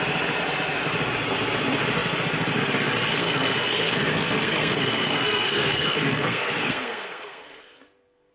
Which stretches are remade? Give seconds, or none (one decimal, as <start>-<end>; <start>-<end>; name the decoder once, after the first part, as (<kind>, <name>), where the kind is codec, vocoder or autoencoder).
3.1-8.3 (codec, SNAC)